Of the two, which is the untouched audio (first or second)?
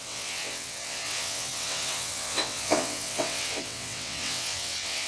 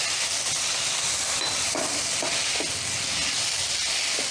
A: second